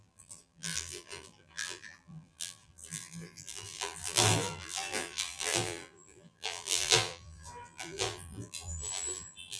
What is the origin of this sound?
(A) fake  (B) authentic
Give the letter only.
A